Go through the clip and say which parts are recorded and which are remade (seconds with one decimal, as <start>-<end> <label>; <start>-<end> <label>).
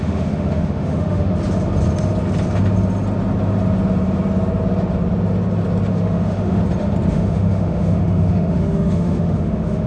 0.0-1.3 remade; 1.3-5.9 recorded; 5.9-6.6 remade; 6.6-7.1 recorded; 7.1-9.9 remade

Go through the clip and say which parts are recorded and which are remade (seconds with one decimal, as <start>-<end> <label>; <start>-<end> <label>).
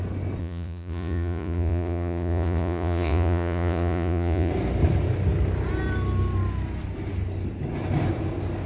0.0-0.4 recorded; 0.4-4.5 remade; 4.5-8.7 recorded